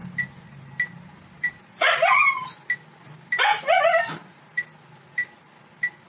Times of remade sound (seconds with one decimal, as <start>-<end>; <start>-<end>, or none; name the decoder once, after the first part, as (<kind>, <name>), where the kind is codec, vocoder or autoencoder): none